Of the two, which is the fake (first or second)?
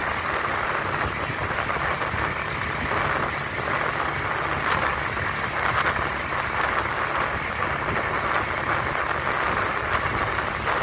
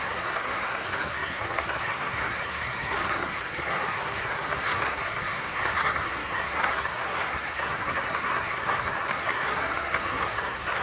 second